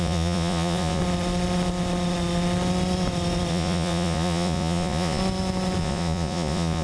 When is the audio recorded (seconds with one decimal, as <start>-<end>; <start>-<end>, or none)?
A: 1.0-3.5; 5.2-5.8